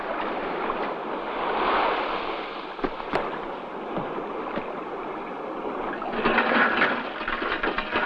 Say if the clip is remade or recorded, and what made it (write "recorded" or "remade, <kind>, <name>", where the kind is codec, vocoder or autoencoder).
recorded